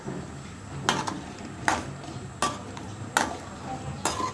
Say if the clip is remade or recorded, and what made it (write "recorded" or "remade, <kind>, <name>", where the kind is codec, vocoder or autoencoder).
recorded